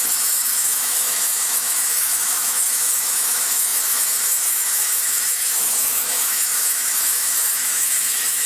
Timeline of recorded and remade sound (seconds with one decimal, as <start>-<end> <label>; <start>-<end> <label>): 0.0-8.5 remade